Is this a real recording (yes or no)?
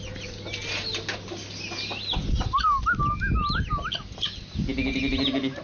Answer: yes